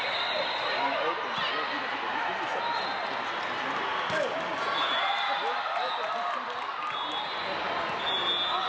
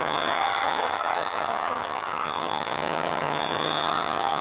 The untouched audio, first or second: first